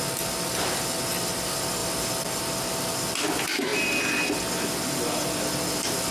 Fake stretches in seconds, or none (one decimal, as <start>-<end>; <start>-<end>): 1.8-2.4